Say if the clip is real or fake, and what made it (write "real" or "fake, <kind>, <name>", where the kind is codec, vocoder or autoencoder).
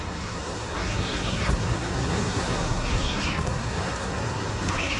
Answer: fake, codec, SNAC